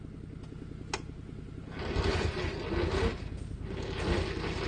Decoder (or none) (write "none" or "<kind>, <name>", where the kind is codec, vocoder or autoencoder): none